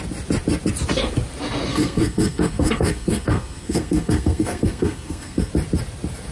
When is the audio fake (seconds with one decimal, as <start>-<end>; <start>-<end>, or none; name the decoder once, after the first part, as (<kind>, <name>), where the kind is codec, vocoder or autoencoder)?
1.7-5.5 (codec, SNAC)